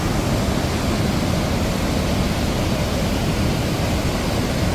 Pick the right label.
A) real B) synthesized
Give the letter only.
A